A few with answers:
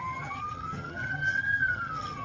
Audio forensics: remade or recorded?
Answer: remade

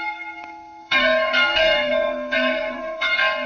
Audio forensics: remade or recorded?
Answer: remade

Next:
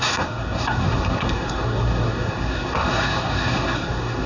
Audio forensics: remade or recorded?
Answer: remade